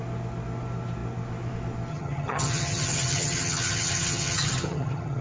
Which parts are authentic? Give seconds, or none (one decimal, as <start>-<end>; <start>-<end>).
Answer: 0.0-1.9